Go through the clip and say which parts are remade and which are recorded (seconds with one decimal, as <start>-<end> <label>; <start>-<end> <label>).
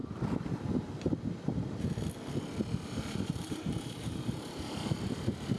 0.0-3.3 recorded; 3.3-5.6 remade